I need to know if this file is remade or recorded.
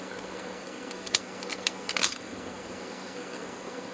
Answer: remade